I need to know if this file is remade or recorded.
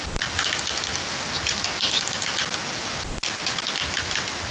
recorded